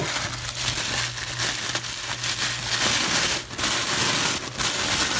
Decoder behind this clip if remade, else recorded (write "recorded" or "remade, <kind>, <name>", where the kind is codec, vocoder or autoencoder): recorded